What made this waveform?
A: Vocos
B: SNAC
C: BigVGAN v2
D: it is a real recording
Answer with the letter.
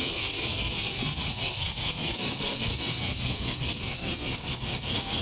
B